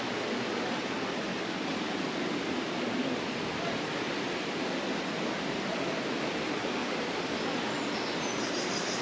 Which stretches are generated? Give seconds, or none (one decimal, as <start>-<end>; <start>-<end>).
none